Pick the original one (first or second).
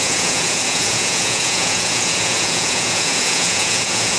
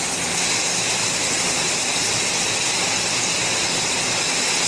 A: second